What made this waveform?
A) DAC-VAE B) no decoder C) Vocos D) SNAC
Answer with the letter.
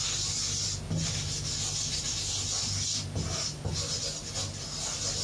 B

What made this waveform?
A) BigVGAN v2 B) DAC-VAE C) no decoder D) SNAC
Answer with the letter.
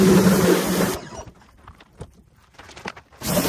A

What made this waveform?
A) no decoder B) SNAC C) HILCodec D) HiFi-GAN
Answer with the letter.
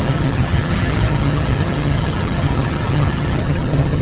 D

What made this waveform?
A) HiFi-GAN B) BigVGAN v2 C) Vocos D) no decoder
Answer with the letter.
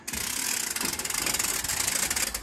D